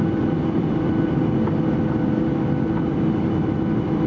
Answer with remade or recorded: recorded